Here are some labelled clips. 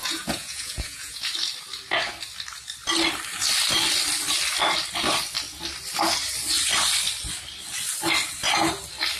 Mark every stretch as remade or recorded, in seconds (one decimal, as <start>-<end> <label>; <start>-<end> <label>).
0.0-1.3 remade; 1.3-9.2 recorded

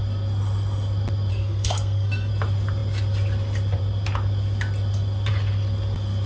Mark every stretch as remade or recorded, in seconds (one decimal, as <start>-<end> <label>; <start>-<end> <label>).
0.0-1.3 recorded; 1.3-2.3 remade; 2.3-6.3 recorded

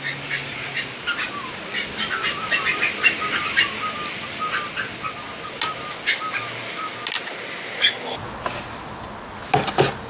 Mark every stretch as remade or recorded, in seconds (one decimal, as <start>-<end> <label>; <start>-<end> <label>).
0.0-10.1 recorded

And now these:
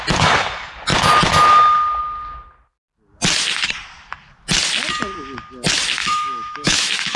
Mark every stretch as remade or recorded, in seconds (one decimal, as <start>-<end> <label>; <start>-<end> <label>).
0.0-6.0 recorded; 6.0-7.2 remade

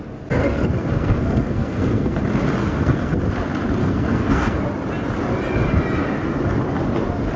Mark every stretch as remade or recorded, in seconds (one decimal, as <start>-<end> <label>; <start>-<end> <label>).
0.0-0.4 recorded; 0.4-2.2 remade; 2.2-2.6 recorded; 2.6-3.2 remade; 3.2-3.8 recorded; 3.8-4.6 remade; 4.6-7.4 recorded